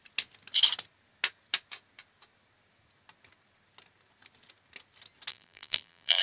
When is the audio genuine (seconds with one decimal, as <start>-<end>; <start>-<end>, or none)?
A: 0.0-5.3